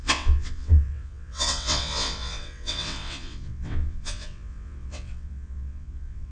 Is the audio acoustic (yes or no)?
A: no